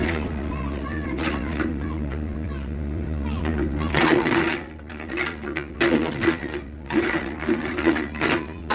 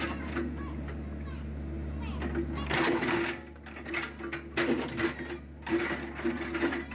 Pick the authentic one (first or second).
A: second